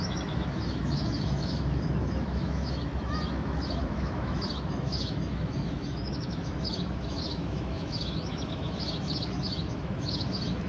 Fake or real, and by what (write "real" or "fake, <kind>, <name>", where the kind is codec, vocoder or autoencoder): fake, autoencoder, DAC-VAE